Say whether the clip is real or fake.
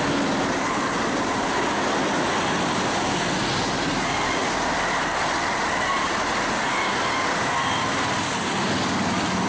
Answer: real